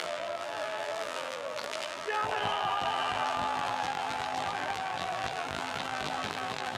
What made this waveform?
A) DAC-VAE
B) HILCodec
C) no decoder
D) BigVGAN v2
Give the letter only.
D